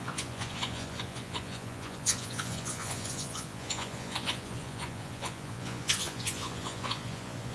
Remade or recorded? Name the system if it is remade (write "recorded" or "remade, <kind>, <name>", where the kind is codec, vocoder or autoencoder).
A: remade, vocoder, Vocos